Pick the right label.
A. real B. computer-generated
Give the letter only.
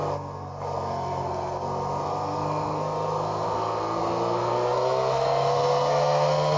B